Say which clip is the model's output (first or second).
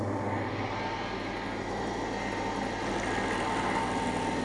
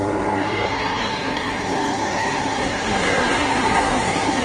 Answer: second